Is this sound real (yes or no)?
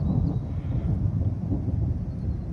yes